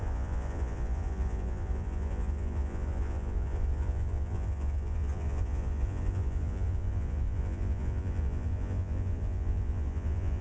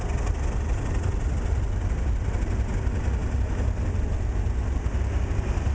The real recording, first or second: second